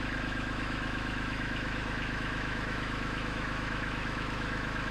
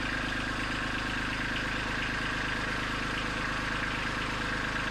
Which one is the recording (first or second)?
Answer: second